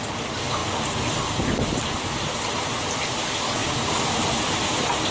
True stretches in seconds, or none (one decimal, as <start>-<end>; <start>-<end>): 0.0-3.6